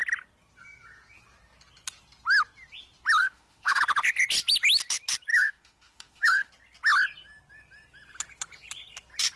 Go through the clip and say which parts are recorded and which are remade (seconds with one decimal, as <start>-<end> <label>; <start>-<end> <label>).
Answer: 0.0-3.2 recorded; 3.2-3.8 remade; 3.8-5.3 recorded; 5.3-6.5 remade; 6.5-9.4 recorded